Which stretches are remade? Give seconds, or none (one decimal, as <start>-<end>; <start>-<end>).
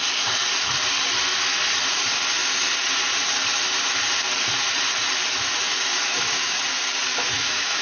6.0-6.6; 7.1-7.8